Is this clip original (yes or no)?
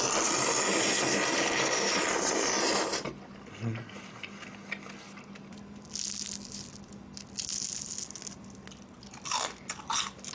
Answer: yes